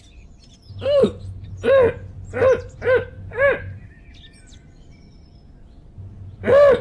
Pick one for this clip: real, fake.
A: real